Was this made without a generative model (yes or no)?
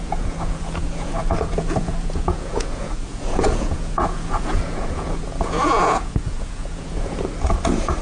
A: no